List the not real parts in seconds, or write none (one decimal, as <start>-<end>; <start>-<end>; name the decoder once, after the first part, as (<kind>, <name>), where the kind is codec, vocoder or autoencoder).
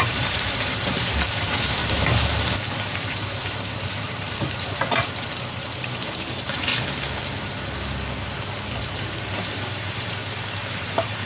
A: 0.0-1.8 (vocoder, BigVGAN v2); 2.9-6.7; 8.8-10.2; 10.7-11.3